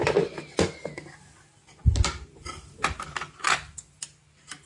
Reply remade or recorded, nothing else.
recorded